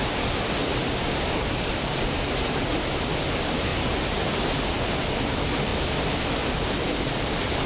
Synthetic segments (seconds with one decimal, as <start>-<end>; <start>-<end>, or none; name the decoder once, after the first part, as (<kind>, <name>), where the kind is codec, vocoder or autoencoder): none